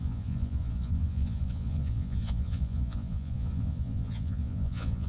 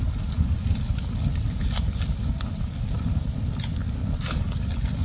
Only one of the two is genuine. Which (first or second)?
second